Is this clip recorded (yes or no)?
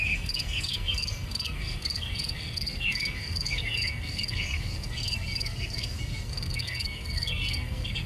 no